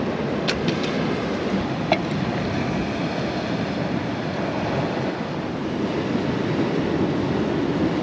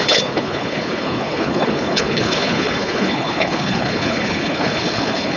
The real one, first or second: first